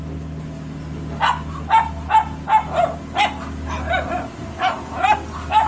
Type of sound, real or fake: real